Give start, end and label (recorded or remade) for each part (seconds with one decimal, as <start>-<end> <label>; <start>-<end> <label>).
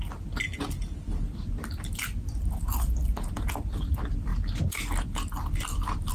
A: 0.0-6.1 recorded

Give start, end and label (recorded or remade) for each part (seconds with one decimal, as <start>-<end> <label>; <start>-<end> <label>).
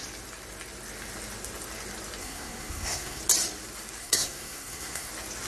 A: 0.0-2.2 recorded; 2.2-3.2 remade; 3.2-4.0 recorded; 4.0-5.1 remade; 5.1-5.5 recorded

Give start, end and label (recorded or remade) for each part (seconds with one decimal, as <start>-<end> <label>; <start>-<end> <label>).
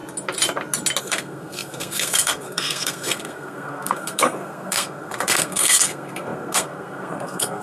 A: 0.0-1.0 recorded; 1.0-7.6 remade